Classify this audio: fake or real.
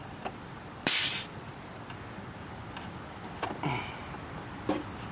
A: fake